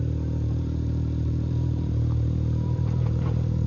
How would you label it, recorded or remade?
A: remade